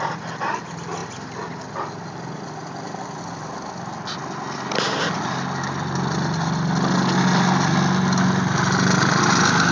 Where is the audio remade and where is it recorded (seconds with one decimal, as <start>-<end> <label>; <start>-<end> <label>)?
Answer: 0.0-9.7 recorded